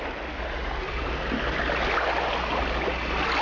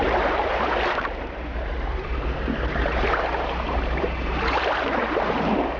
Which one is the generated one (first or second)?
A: second